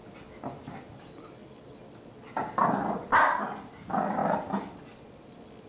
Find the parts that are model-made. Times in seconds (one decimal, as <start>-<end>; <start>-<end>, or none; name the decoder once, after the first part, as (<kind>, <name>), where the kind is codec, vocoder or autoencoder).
none